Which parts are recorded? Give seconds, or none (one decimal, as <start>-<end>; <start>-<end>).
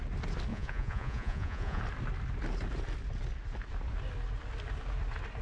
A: 0.0-0.5; 1.8-5.4